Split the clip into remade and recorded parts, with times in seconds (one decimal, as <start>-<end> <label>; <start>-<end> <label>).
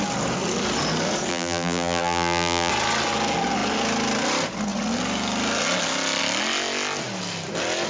0.0-1.3 recorded; 1.3-2.7 remade; 2.7-7.9 recorded